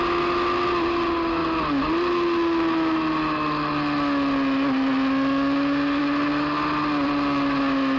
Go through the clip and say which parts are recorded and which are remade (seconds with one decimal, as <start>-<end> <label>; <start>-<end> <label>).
0.0-8.0 recorded